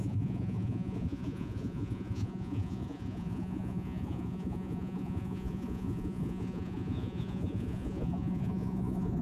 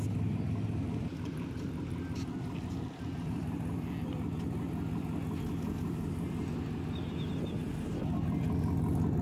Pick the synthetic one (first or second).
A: first